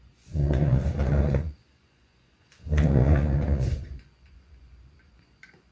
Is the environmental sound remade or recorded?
remade